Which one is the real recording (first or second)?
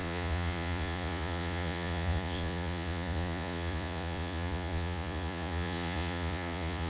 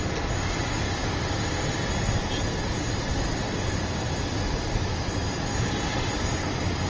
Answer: second